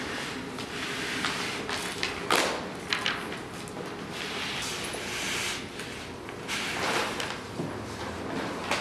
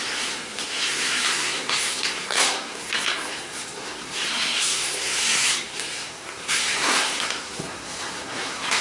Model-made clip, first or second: second